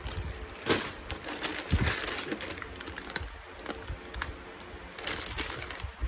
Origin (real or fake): real